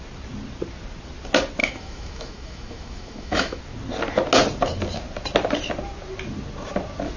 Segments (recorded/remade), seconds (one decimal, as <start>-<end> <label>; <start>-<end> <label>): 0.0-1.6 recorded; 1.6-3.6 remade; 3.6-7.2 recorded